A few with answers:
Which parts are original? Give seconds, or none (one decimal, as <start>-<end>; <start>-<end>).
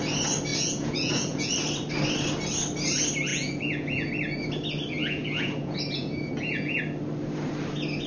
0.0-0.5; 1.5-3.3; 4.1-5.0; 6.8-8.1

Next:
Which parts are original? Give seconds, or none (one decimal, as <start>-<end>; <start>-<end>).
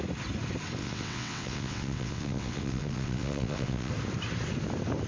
0.0-0.8; 3.9-5.1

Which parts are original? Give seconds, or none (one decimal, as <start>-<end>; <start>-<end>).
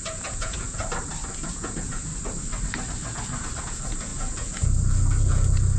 0.8-1.5; 2.1-3.6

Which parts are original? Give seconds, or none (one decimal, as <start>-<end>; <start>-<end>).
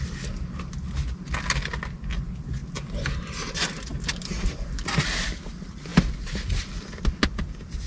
0.0-7.9